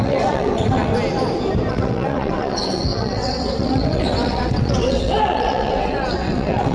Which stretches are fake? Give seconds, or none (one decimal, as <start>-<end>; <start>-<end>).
0.0-0.9; 1.7-6.7